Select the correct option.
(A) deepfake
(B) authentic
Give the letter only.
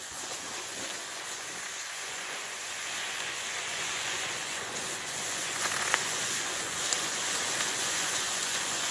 A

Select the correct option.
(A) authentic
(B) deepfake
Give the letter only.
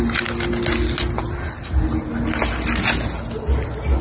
A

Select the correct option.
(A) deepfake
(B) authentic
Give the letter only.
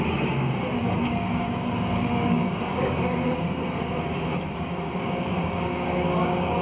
A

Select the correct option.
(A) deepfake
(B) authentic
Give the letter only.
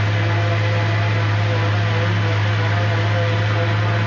B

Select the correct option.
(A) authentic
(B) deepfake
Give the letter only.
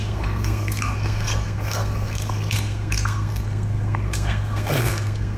B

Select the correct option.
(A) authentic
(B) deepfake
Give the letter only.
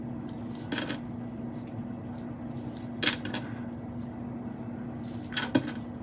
A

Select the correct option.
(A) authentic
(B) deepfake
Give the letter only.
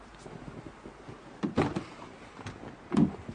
A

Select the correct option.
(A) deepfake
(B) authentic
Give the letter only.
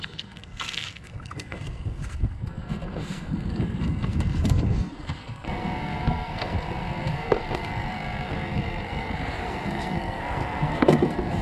A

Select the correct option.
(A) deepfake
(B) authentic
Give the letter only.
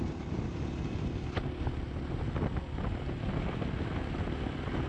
B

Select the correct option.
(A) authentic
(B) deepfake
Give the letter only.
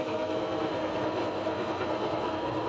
B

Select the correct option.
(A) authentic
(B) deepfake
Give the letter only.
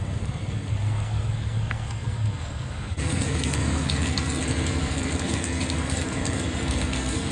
B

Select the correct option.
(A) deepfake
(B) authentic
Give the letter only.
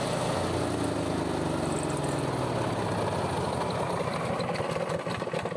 B